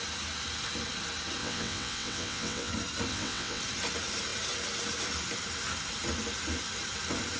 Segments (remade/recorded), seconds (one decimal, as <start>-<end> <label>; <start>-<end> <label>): 0.0-1.4 recorded; 1.4-2.7 remade; 2.7-3.1 recorded; 3.1-3.6 remade; 3.6-7.4 recorded